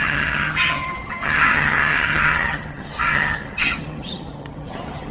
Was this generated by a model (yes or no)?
yes